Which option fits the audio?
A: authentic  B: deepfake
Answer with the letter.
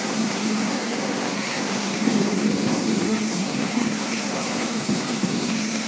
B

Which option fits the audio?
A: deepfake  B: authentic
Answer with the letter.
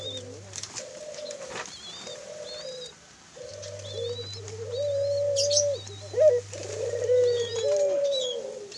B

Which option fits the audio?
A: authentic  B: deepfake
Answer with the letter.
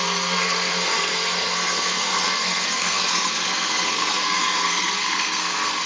B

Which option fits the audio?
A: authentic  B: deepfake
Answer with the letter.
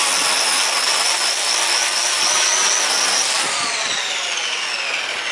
A